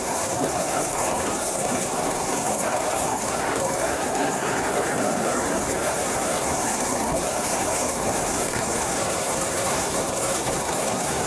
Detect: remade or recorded remade